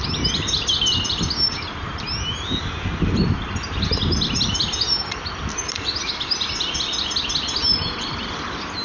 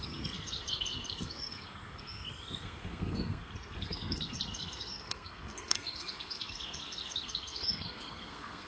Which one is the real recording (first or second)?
first